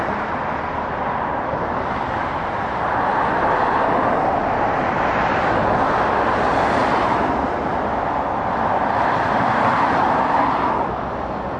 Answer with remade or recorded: recorded